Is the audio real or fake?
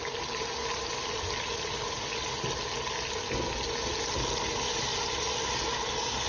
real